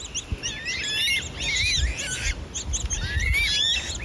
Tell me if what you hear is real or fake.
real